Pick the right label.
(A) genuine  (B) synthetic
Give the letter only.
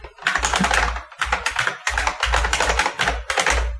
A